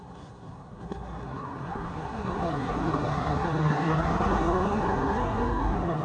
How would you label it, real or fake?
fake